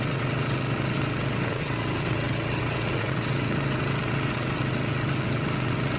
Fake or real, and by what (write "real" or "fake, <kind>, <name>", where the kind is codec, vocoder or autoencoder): fake, vocoder, WaveNeXt